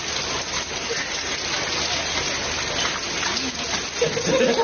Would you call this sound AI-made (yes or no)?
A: no